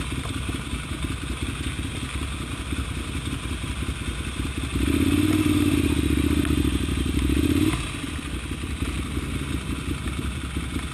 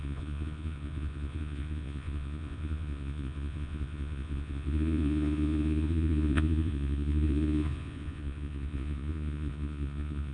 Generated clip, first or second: second